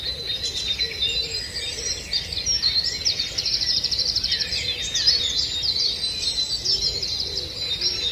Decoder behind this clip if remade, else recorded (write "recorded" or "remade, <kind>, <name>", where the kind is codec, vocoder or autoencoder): recorded